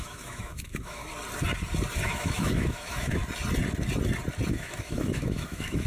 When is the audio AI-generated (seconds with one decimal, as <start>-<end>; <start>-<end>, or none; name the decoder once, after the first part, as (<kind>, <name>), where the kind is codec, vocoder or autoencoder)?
0.0-1.0 (autoencoder, DAC-VAE); 2.0-3.2; 4.5-5.9